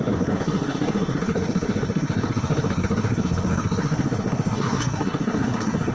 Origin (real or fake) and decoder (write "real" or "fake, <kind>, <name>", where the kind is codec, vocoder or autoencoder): fake, codec, SNAC